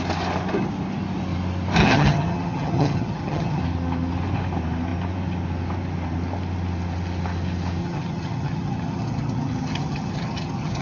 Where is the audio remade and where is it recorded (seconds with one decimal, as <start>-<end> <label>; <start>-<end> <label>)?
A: 0.0-1.8 recorded; 1.8-3.6 remade; 3.6-7.8 recorded; 7.8-10.8 remade